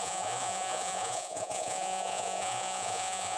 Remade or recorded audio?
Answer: remade